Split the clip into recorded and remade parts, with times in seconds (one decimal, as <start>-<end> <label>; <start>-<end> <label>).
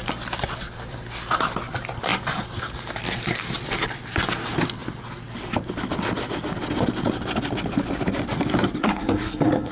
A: 0.0-8.8 recorded; 8.8-9.7 remade